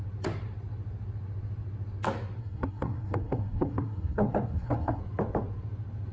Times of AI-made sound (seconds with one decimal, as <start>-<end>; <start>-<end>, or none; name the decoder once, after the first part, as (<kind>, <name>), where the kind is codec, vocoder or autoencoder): 2.4-5.0 (codec, SNAC)